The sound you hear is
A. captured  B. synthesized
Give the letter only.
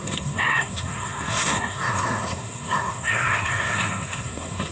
B